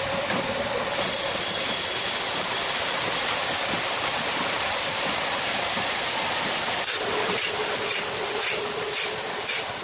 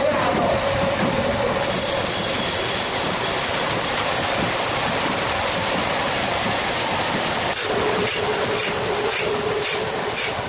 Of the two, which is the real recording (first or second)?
second